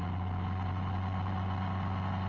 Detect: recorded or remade recorded